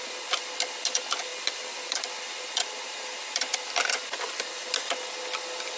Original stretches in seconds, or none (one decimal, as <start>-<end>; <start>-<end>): 0.0-5.8